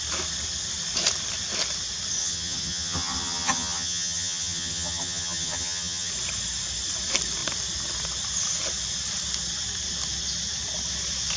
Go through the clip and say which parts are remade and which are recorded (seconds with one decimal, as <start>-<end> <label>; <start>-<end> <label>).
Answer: 0.0-2.2 recorded; 2.2-6.1 remade; 6.1-11.4 recorded